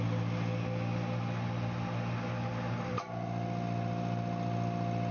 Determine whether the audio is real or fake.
real